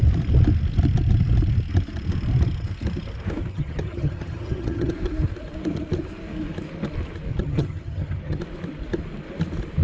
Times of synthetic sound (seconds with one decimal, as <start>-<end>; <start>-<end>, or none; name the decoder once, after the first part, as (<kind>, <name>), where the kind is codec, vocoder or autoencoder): 3.5-4.9 (vocoder, HiFi-GAN); 7.3-8.4